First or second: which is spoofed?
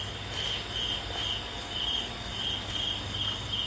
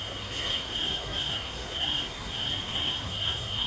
second